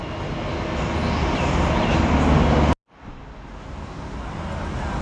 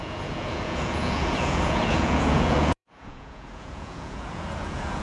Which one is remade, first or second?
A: second